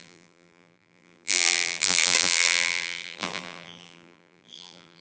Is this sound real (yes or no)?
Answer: no